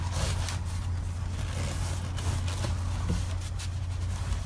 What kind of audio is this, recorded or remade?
recorded